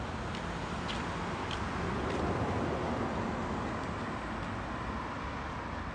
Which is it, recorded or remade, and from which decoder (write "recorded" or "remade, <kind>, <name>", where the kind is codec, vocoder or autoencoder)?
recorded